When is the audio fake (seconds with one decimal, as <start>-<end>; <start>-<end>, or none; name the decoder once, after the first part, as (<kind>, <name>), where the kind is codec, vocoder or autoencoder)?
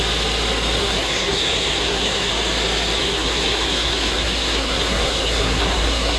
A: 0.8-2.3 (codec, SNAC); 3.0-6.2